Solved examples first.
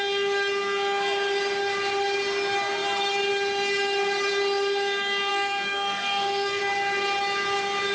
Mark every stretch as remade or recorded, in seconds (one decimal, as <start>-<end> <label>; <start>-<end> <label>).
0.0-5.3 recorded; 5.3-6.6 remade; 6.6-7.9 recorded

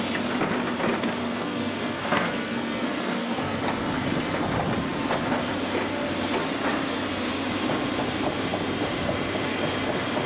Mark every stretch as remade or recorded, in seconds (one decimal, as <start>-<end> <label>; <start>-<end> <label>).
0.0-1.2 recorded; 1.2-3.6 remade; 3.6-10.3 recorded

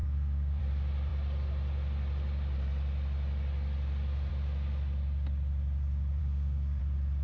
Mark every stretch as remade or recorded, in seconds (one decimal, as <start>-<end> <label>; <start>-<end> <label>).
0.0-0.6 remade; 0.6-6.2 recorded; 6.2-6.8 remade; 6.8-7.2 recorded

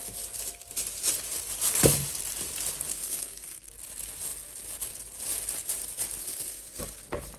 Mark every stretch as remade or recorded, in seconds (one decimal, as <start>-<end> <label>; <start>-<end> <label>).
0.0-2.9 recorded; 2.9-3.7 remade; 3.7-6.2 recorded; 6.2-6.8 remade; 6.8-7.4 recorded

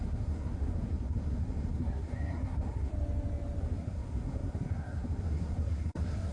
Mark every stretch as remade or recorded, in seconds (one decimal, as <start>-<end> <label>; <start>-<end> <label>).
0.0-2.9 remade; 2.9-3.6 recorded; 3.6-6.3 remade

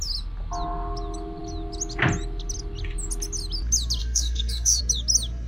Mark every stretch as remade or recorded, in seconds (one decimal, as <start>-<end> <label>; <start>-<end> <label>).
0.0-4.0 recorded; 4.0-4.8 remade; 4.8-5.5 recorded

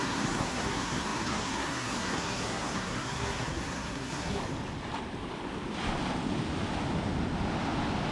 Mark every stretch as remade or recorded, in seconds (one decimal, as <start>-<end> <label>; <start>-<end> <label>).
0.0-4.4 remade; 4.4-8.1 recorded

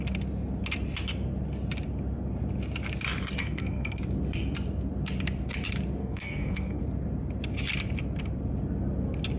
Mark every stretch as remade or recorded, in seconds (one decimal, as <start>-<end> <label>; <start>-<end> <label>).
0.0-3.4 recorded; 3.4-4.0 remade; 4.0-6.0 recorded; 6.0-6.8 remade; 6.8-9.4 recorded